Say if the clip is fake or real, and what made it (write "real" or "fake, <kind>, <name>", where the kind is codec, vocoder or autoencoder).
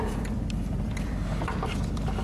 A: fake, vocoder, BigVGAN v2